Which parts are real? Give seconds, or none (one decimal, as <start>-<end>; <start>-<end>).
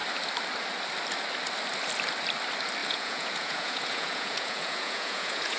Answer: 0.0-2.8